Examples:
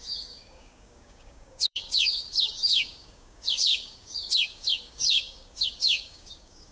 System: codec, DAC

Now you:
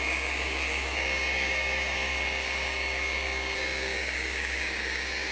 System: codec, DAC